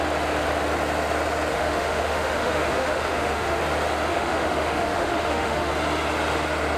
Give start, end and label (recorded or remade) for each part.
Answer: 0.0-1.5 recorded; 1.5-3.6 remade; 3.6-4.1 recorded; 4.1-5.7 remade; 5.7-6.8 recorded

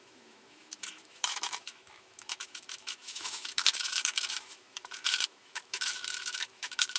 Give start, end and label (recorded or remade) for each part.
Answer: 0.0-7.0 remade

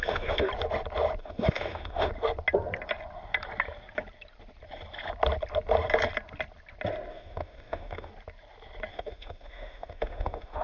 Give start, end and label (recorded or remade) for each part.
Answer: 0.0-0.5 remade; 0.5-1.2 recorded; 1.2-2.1 remade; 2.1-7.1 recorded; 7.1-8.1 remade; 8.1-8.9 recorded; 8.9-10.6 remade